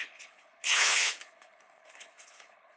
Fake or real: fake